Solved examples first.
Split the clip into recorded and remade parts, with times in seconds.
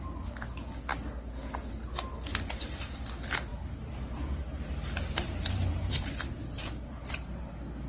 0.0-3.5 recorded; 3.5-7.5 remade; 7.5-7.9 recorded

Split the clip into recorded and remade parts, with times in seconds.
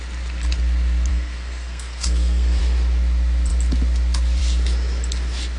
0.0-1.1 recorded; 1.1-2.6 remade; 2.6-5.6 recorded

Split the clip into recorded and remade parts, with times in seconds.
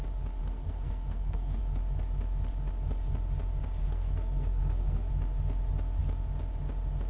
0.0-0.4 recorded; 0.4-1.6 remade; 1.6-3.8 recorded; 3.8-5.1 remade; 5.1-7.1 recorded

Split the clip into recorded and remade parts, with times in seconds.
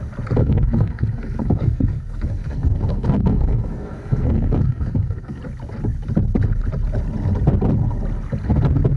0.0-0.4 recorded; 0.4-5.4 remade; 5.4-9.0 recorded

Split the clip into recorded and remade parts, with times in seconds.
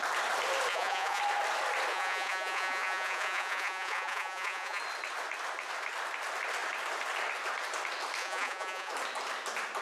0.0-0.7 recorded; 0.7-1.2 remade; 1.2-1.9 recorded; 1.9-4.8 remade; 4.8-8.2 recorded; 8.2-8.9 remade; 8.9-9.8 recorded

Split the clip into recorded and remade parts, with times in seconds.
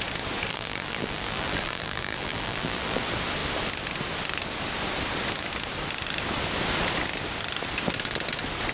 0.0-0.5 recorded; 0.5-3.0 remade; 3.0-8.7 recorded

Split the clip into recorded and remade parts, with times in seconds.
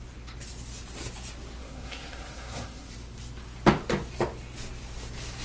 0.0-1.6 recorded; 1.6-2.9 remade; 2.9-5.4 recorded